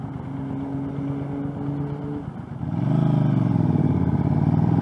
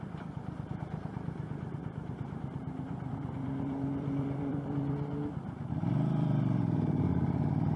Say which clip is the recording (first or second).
first